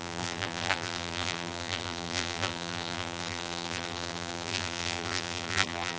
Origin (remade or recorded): remade